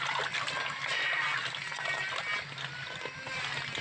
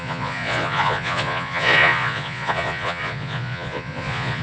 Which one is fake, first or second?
second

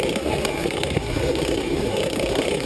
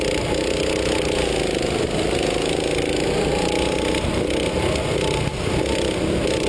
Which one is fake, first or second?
first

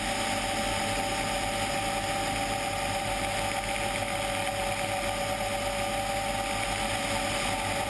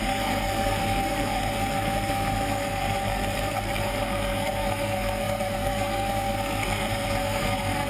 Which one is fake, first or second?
second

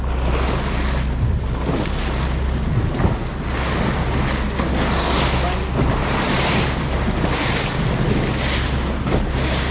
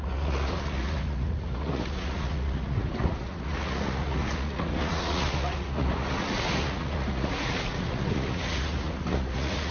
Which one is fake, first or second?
second